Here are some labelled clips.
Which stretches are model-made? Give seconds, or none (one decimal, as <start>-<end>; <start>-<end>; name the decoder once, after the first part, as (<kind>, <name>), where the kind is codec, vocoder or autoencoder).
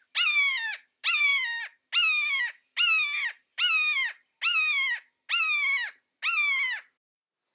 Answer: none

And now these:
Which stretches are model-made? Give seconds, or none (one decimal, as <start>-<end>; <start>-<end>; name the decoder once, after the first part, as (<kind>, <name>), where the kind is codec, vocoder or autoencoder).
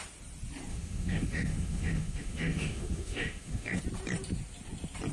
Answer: 0.7-3.8 (autoencoder, DAC-VAE)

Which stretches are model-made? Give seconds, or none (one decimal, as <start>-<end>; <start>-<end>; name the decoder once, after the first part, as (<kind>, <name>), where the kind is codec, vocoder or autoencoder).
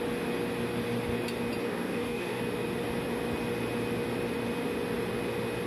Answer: 1.6-2.4 (codec, DAC)